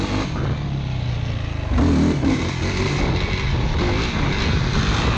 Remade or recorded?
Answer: recorded